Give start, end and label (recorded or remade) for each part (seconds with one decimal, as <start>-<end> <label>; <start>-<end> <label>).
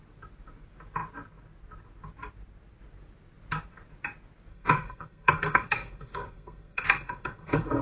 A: 0.0-4.5 recorded; 4.5-7.8 remade